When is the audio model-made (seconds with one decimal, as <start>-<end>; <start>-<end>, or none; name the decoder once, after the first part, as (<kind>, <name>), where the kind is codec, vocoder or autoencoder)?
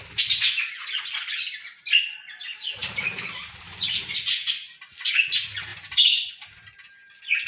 2.8-4.1 (vocoder, BigVGAN v2); 5.7-6.3